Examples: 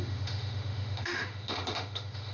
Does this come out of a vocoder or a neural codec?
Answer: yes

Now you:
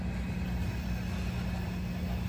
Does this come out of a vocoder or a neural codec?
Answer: no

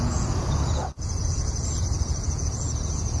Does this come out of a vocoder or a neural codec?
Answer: yes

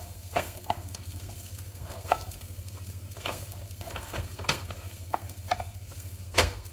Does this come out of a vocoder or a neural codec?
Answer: yes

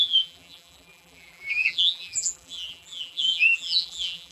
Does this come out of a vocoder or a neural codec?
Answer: yes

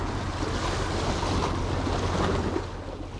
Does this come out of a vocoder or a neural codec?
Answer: no